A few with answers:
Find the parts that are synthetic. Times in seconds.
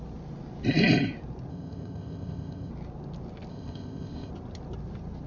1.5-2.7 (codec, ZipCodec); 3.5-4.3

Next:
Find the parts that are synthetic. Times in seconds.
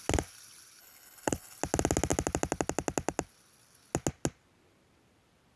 0.8-1.6 (codec, HILCodec)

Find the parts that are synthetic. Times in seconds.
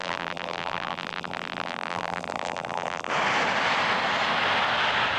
0.0-3.1 (vocoder, BigVGAN v2)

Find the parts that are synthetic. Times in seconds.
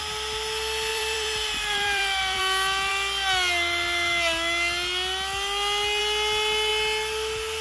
0.9-2.4 (vocoder, BigVGAN v2)